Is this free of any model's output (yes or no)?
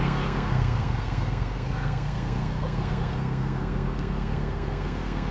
no